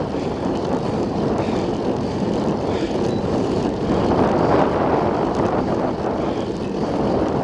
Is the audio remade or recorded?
recorded